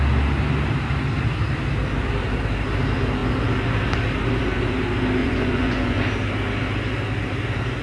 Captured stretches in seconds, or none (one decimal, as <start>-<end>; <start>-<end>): 0.0-5.2; 6.0-7.8

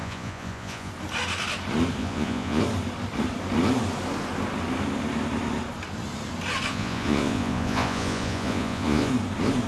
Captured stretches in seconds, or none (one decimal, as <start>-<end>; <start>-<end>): 0.9-2.0; 2.6-6.7; 9.1-9.7

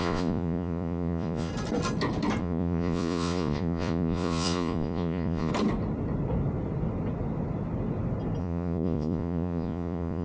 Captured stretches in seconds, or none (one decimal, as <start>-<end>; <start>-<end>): 1.5-2.4; 5.5-8.4